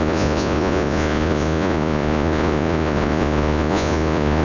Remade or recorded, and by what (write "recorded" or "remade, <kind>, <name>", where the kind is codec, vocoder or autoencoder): remade, vocoder, Vocos